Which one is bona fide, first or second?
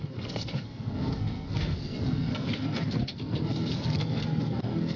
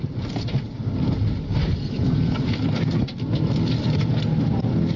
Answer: second